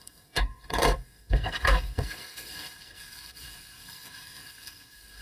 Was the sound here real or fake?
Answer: fake